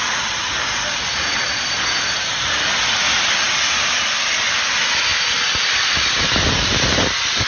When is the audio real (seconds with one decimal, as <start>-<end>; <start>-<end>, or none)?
0.0-5.1; 6.2-7.5